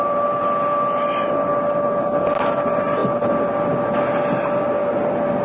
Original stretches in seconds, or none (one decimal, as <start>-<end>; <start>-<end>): 0.0-5.4